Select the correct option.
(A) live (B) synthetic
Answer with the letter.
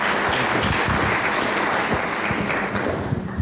A